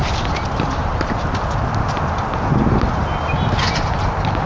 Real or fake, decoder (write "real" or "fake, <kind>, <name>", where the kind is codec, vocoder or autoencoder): real